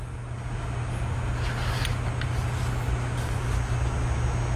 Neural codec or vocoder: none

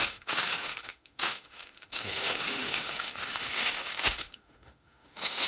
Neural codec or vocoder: autoencoder, DAC-VAE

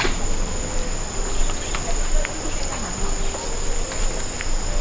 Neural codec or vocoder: none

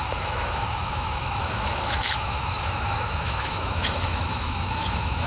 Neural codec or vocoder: autoencoder, DAC-VAE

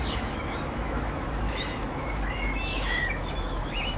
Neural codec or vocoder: autoencoder, DAC-VAE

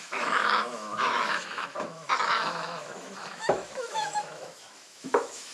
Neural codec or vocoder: autoencoder, DAC-VAE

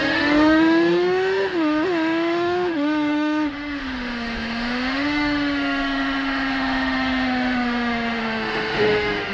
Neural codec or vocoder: autoencoder, DAC-VAE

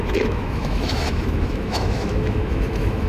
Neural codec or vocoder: autoencoder, DAC-VAE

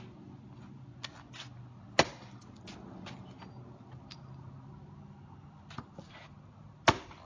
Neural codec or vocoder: none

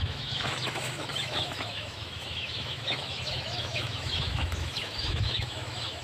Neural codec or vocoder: autoencoder, DAC-VAE